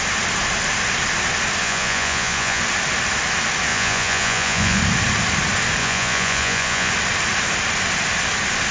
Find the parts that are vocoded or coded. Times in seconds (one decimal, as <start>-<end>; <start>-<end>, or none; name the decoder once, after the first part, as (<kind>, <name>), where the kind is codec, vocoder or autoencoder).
1.6-2.6 (vocoder, Vocos); 3.7-4.8; 5.8-6.9